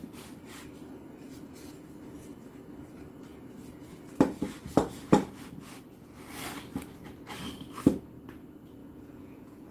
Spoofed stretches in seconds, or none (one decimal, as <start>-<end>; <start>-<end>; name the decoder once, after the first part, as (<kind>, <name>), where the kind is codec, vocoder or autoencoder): 8.8-9.7 (vocoder, Vocos)